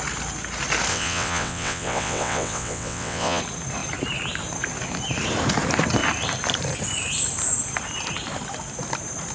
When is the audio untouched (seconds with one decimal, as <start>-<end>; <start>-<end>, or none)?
0.0-0.9; 3.4-9.3